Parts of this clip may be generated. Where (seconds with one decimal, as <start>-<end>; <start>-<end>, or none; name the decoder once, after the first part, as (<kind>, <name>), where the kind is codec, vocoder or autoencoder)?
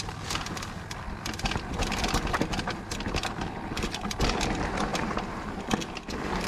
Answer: 4.9-5.6 (vocoder, BigVGAN v2)